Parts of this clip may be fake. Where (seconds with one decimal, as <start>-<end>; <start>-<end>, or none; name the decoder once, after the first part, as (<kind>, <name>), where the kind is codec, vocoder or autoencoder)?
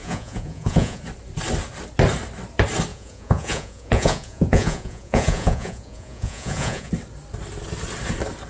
0.0-1.0 (vocoder, Vocos); 2.9-6.9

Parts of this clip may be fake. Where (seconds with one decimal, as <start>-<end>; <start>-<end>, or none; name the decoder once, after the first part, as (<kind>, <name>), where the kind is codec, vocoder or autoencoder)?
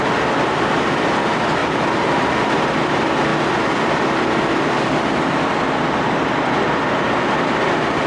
1.6-2.4 (vocoder, BigVGAN v2)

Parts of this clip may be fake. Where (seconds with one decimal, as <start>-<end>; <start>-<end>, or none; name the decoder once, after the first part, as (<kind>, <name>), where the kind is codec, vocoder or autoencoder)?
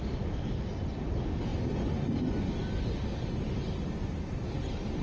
none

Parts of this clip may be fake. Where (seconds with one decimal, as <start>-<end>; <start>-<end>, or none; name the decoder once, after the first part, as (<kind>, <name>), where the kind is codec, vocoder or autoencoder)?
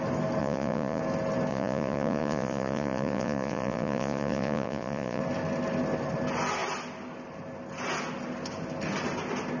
0.4-1.0 (vocoder, Vocos); 1.5-5.2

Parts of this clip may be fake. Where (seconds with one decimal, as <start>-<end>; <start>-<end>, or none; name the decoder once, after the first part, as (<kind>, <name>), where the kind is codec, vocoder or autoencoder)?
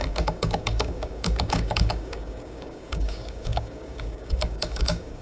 0.0-5.2 (codec, DAC)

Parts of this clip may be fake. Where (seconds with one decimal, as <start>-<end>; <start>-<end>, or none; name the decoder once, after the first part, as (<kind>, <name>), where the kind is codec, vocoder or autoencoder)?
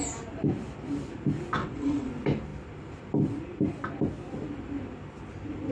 1.6-2.1 (vocoder, WaveNeXt)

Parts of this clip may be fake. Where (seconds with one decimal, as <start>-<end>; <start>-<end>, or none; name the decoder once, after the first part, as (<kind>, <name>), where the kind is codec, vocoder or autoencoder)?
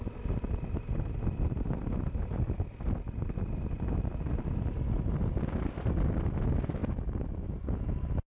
none